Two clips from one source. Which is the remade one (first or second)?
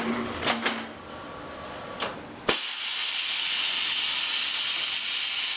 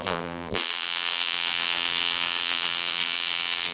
second